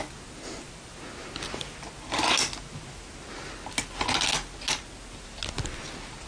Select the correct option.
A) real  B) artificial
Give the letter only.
A